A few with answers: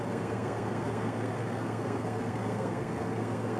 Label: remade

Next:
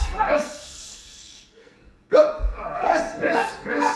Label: remade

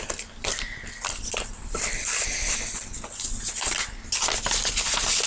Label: recorded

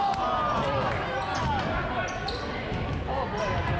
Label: recorded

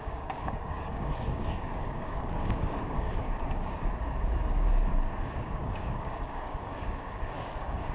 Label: remade